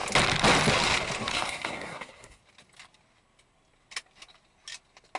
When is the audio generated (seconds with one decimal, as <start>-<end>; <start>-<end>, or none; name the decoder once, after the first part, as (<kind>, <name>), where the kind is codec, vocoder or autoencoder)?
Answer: 1.3-2.4 (codec, SNAC)